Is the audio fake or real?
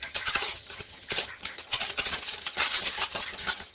fake